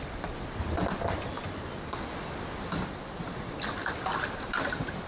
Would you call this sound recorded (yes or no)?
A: yes